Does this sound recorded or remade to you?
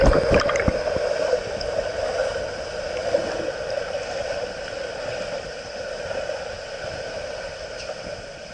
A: recorded